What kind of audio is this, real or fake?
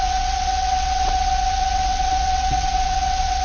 fake